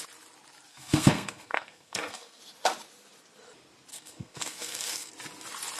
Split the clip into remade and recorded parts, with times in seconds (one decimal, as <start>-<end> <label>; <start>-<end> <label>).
0.0-0.7 recorded; 0.7-2.4 remade; 2.4-3.9 recorded; 3.9-5.1 remade; 5.1-5.8 recorded